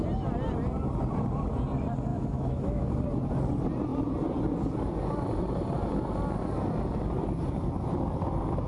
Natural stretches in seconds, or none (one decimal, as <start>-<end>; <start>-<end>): 0.0-2.1; 2.9-8.7